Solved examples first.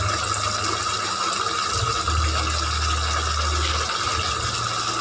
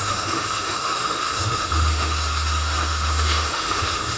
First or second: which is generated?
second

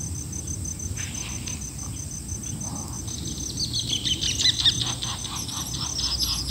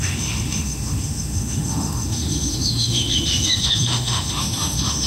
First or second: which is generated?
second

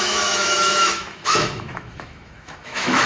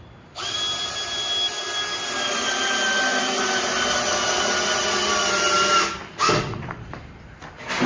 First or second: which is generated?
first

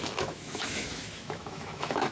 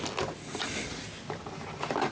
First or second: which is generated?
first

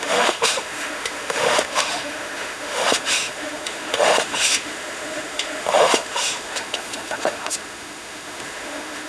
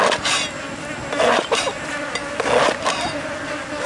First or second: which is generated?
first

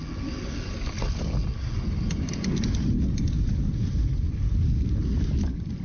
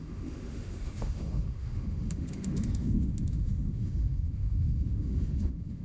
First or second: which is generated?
second